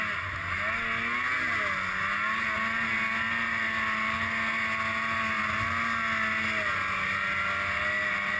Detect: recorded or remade recorded